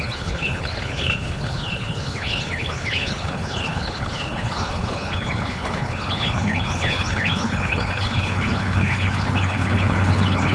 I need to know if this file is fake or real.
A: fake